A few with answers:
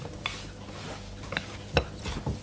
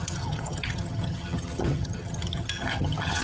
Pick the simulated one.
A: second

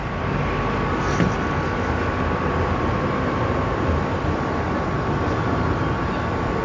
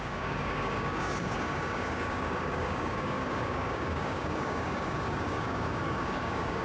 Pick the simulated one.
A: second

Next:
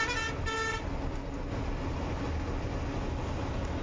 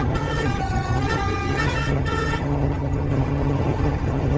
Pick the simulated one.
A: second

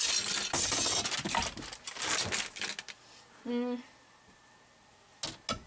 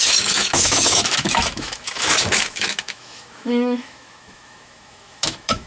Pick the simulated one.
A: second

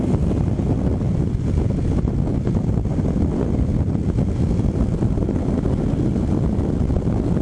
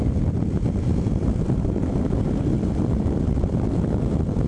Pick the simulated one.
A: second